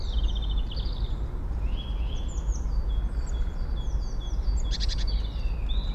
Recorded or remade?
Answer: recorded